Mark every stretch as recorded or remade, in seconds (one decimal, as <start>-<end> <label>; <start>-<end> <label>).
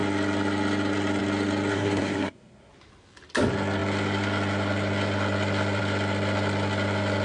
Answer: 0.0-1.7 recorded; 1.7-2.7 remade; 2.7-7.2 recorded